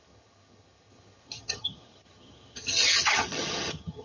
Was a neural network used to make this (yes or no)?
yes